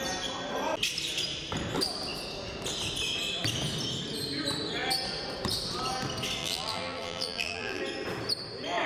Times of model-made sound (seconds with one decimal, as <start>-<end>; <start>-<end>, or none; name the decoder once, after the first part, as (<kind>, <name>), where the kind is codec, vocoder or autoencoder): 6.4-7.8 (vocoder, BigVGAN v2)